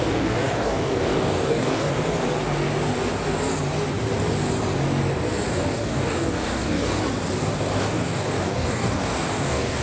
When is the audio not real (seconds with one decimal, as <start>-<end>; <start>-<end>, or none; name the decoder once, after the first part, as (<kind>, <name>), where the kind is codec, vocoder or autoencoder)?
0.0-1.9 (codec, DAC); 5.5-7.0; 7.8-9.8